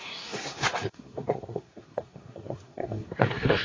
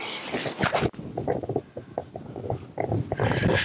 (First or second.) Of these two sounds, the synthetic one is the first